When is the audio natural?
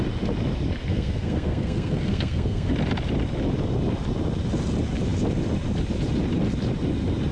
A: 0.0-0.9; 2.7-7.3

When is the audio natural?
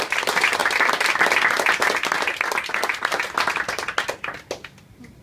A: 0.0-5.2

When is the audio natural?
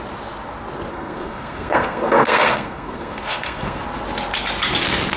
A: 0.0-0.9; 3.8-5.2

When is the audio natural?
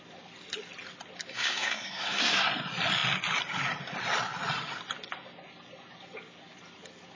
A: 0.0-1.3; 2.5-7.1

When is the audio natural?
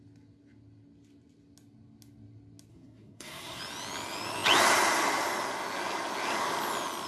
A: 0.0-2.7; 3.6-7.1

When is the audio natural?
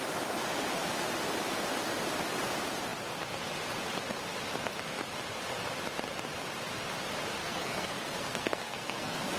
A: 0.0-7.4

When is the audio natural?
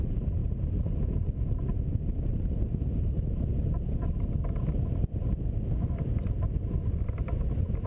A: 0.0-7.9